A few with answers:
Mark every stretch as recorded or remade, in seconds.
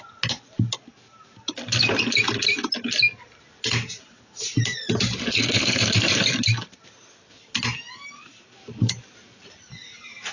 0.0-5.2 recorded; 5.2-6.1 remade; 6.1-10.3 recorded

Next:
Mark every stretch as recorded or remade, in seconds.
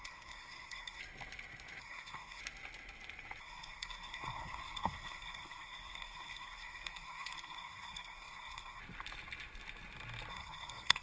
0.0-1.0 remade; 1.0-1.8 recorded; 1.8-2.4 remade; 2.4-3.4 recorded; 3.4-8.8 remade; 8.8-10.3 recorded; 10.3-11.0 remade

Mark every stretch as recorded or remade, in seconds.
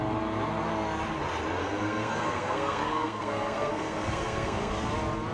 0.0-1.6 recorded; 1.6-4.7 remade; 4.7-5.3 recorded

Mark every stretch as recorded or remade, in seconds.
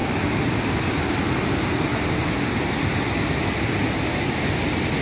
0.0-5.0 recorded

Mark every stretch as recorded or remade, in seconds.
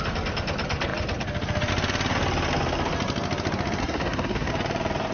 0.0-3.8 recorded; 3.8-4.5 remade; 4.5-5.1 recorded